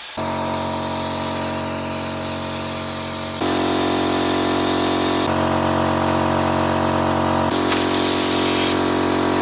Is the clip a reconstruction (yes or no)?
no